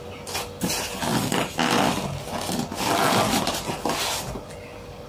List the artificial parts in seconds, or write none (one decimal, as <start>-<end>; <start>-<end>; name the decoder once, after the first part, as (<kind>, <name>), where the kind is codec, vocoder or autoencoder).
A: none